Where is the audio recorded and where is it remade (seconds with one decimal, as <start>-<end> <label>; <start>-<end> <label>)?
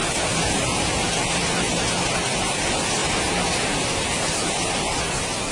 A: 0.0-0.9 remade; 0.9-3.0 recorded; 3.0-5.0 remade; 5.0-5.5 recorded